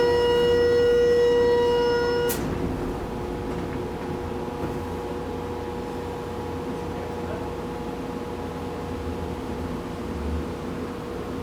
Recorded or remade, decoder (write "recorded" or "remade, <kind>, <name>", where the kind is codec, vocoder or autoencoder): recorded